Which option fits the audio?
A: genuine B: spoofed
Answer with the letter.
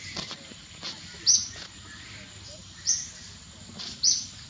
A